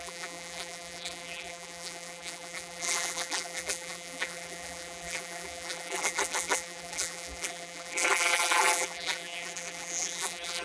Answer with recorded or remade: remade